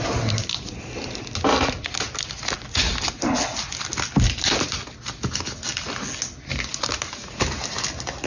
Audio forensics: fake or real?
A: real